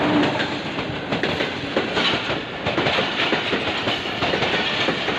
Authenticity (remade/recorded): recorded